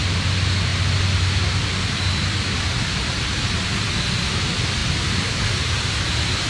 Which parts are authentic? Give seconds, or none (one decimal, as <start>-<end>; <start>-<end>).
0.0-6.5